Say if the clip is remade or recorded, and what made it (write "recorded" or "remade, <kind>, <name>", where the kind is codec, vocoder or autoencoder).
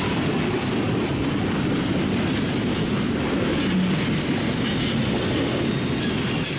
recorded